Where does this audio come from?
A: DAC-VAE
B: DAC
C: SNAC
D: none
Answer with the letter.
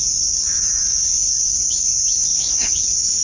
B